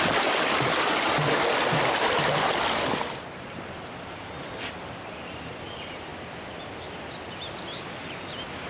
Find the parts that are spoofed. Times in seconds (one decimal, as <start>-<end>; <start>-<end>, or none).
none